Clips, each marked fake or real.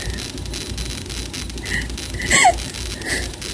real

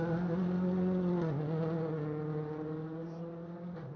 real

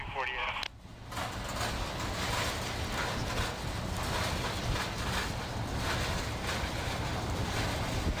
real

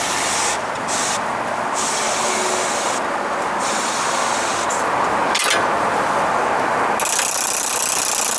real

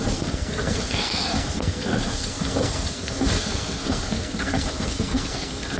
fake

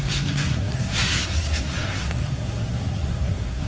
fake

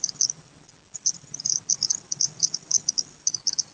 real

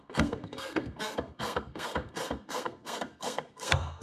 fake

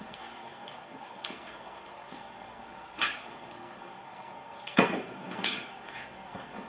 fake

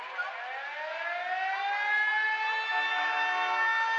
real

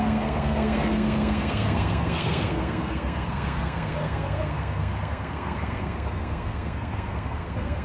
fake